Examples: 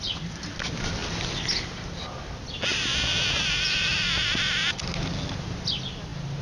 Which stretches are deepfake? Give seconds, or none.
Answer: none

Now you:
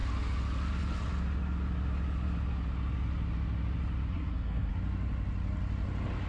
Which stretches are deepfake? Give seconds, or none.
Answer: 4.1-4.7 (codec, SNAC)

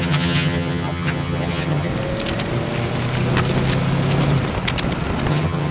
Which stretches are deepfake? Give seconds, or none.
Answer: 0.0-1.9 (vocoder, HiFi-GAN); 5.3-5.7

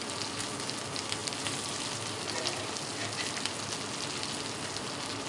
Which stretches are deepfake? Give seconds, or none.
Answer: none